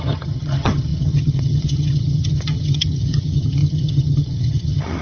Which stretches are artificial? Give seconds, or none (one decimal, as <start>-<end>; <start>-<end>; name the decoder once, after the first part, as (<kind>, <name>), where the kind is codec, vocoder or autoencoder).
0.0-5.0 (vocoder, HiFi-GAN)